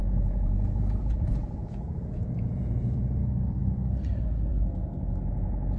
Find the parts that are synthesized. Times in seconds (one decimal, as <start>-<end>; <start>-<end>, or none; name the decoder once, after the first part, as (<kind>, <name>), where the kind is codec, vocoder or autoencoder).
0.0-1.0 (vocoder, Vocos); 1.6-3.6